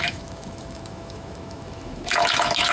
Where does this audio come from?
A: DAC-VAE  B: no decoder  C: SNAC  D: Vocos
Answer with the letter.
A